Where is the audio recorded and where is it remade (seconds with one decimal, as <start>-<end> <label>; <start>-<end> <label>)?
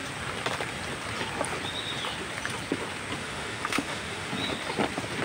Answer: 0.0-3.2 recorded; 3.2-4.3 remade; 4.3-5.2 recorded